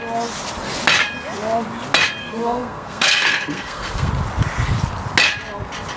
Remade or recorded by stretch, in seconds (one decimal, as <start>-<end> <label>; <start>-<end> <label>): 0.0-2.2 recorded; 2.2-4.1 remade; 4.1-6.0 recorded

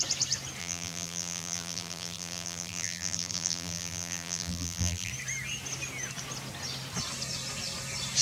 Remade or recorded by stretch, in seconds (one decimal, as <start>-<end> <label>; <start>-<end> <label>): 0.0-0.6 recorded; 0.6-5.1 remade; 5.1-8.2 recorded

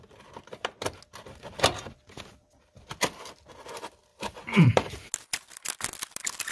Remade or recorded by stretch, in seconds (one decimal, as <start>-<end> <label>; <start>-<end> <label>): 0.0-4.1 recorded; 4.1-5.0 remade; 5.0-6.5 recorded

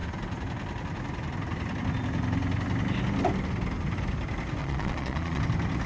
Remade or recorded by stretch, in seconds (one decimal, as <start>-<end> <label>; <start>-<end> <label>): 0.0-4.6 recorded; 4.6-5.4 remade; 5.4-5.9 recorded

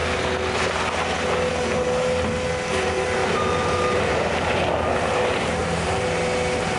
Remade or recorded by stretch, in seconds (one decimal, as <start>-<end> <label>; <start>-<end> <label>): 0.0-3.2 recorded; 3.2-4.7 remade; 4.7-5.6 recorded; 5.6-6.2 remade; 6.2-6.8 recorded

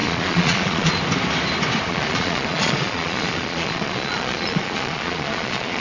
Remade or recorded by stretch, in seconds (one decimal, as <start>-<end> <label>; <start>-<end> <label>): 0.0-0.9 remade; 0.9-1.9 recorded; 1.9-5.8 remade

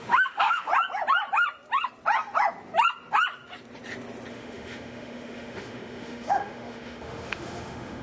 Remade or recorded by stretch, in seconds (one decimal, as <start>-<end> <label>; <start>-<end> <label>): 0.0-0.7 remade; 0.7-4.3 recorded; 4.3-8.0 remade